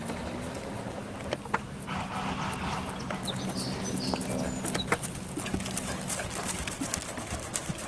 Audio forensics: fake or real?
real